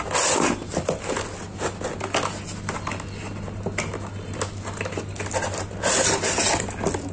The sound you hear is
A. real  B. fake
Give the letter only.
A